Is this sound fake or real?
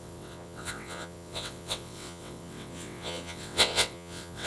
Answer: fake